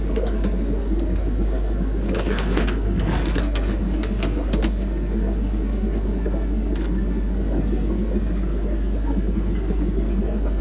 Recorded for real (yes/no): no